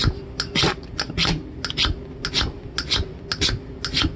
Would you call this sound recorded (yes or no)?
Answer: yes